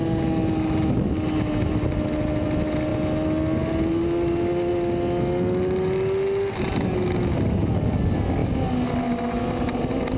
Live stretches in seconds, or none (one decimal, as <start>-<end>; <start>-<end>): 0.0-10.2